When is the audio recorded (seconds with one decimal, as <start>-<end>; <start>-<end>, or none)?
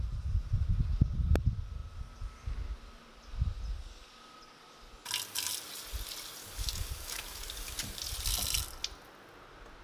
0.0-6.4; 8.0-9.8